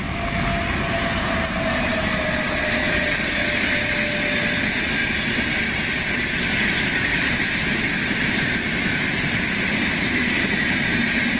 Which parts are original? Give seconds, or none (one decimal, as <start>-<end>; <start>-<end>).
0.0-11.4